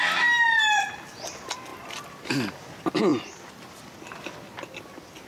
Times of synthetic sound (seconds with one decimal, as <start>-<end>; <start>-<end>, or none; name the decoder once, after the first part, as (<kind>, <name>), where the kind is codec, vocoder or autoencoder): 1.7-2.5 (vocoder, BigVGAN v2); 3.1-4.0